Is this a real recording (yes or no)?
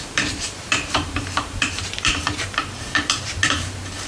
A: no